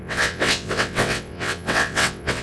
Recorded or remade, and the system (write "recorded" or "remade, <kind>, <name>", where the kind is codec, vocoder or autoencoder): remade, vocoder, WaveNeXt